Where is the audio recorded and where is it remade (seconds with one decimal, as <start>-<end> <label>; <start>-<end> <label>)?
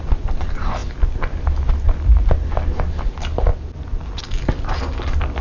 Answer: 0.0-5.4 recorded